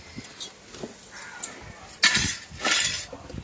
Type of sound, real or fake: real